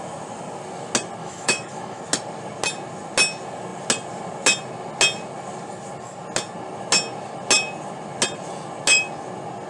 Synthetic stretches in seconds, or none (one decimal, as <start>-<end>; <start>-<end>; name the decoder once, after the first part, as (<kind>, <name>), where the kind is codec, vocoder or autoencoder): 1.2-2.0 (autoencoder, DAC-VAE)